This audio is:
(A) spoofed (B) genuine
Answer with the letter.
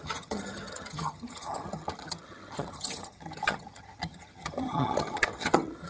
A